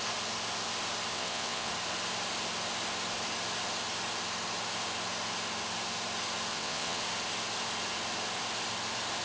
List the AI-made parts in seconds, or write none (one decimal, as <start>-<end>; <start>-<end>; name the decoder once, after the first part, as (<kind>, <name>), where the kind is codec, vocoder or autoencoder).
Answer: 1.1-1.7 (vocoder, WaveNeXt); 6.5-7.0